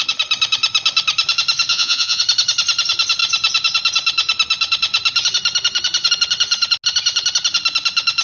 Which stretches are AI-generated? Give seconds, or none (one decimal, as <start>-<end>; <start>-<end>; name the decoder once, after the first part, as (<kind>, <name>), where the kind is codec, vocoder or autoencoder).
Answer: 1.7-2.2 (vocoder, Vocos)

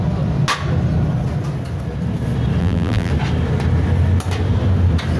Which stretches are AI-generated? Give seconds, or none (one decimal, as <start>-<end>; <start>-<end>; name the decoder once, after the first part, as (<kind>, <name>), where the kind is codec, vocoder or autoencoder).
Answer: 2.6-3.1 (vocoder, BigVGAN v2)

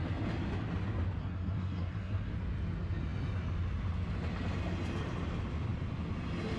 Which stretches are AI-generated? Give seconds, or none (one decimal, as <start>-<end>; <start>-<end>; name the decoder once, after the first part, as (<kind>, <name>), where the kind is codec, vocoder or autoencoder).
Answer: 1.2-2.3 (codec, SNAC)